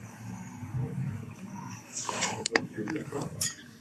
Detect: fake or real fake